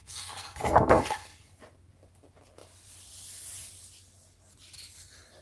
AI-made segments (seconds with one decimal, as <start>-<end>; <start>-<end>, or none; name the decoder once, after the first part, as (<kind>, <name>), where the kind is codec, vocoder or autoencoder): 0.0-1.5 (codec, SNAC)